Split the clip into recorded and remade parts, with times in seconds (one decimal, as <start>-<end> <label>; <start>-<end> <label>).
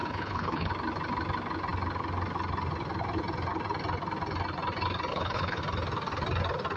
0.0-0.7 remade; 0.7-5.1 recorded; 5.1-5.6 remade; 5.6-6.8 recorded